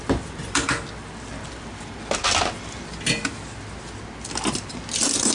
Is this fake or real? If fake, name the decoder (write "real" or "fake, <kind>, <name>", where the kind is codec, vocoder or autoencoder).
real